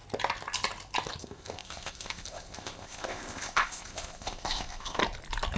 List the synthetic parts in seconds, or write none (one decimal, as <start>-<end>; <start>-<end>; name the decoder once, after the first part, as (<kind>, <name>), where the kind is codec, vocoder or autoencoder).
1.2-5.0 (codec, ZipCodec)